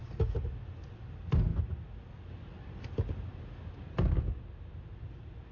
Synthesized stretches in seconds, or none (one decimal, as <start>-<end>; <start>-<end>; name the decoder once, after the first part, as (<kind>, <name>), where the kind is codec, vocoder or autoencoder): none

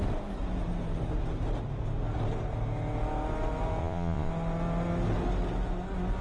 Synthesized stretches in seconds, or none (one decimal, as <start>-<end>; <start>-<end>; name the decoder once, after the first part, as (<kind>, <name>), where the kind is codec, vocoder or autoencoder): 3.8-4.3 (vocoder, Vocos)

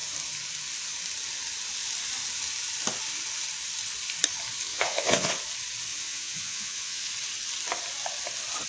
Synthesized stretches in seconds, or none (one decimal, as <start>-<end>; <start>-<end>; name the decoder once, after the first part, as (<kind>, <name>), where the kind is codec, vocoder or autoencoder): 4.7-5.3 (vocoder, Vocos); 5.9-7.1